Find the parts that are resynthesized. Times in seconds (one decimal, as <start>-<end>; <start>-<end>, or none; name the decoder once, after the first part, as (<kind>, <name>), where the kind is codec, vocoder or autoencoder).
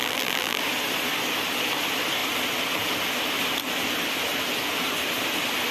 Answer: 0.0-0.6 (vocoder, BigVGAN v2)